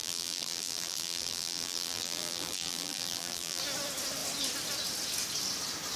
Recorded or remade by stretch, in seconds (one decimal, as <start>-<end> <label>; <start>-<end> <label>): 0.0-3.6 remade; 3.6-6.0 recorded